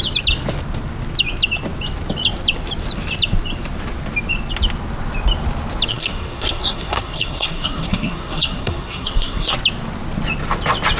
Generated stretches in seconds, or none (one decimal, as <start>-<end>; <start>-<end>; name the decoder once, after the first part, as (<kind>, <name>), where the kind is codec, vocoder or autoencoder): 5.9-9.5 (codec, SNAC)